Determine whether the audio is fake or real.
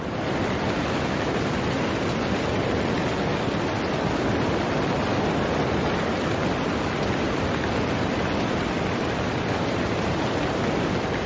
real